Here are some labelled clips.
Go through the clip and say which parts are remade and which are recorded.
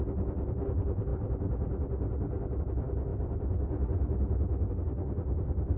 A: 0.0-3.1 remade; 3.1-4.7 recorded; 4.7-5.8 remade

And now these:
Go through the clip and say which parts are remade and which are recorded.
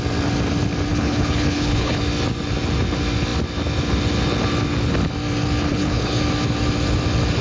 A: 0.0-0.9 recorded; 0.9-2.0 remade; 2.0-5.7 recorded; 5.7-6.2 remade; 6.2-7.4 recorded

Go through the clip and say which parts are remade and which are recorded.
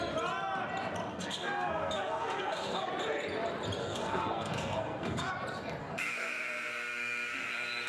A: 0.0-1.1 recorded; 1.1-2.9 remade; 2.9-3.8 recorded; 3.8-5.3 remade; 5.3-5.8 recorded; 5.8-7.9 remade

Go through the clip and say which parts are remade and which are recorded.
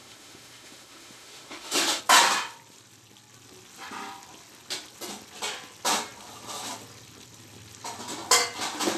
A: 0.0-2.0 remade; 2.0-9.0 recorded